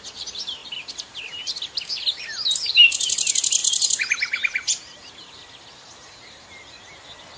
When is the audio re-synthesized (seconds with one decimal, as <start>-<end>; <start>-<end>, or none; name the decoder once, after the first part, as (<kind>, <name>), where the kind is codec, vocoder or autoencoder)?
0.6-1.2 (vocoder, BigVGAN v2); 3.6-6.9